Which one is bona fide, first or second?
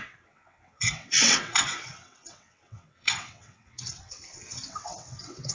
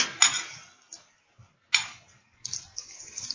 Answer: second